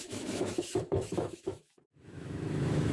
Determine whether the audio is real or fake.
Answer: fake